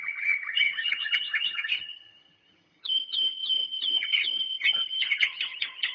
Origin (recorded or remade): remade